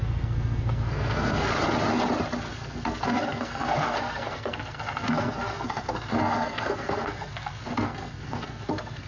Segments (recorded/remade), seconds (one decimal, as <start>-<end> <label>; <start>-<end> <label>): 0.0-1.5 remade; 1.5-2.5 recorded; 2.5-9.1 remade